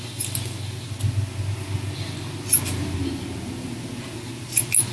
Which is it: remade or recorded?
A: recorded